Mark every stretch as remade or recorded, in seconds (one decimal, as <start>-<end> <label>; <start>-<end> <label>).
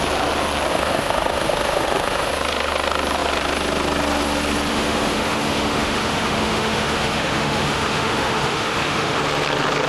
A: 0.0-0.7 recorded; 0.7-2.3 remade; 2.3-4.7 recorded; 4.7-9.2 remade; 9.2-9.9 recorded